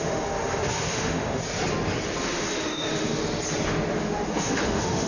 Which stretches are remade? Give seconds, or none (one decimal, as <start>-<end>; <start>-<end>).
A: 0.0-1.4; 2.2-3.2; 4.0-5.1